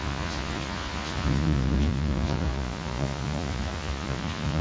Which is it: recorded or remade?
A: remade